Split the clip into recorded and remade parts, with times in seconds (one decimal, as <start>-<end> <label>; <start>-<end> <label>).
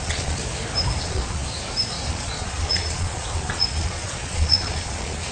0.0-0.4 remade; 0.4-1.0 recorded; 1.0-1.4 remade; 1.4-2.1 recorded; 2.1-5.3 remade